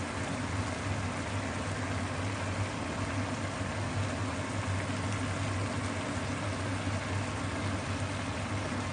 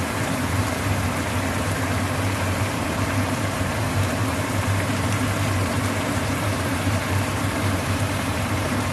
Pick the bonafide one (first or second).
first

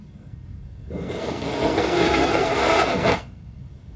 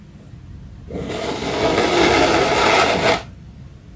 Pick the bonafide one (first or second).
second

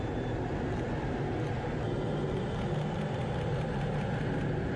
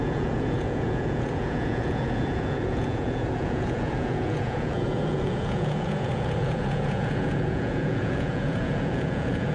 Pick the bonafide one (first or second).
first